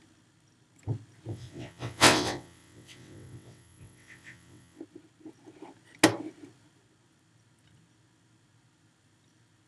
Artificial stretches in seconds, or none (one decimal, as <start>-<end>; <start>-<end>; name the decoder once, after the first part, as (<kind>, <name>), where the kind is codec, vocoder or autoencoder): 1.3-4.8 (vocoder, WaveNeXt)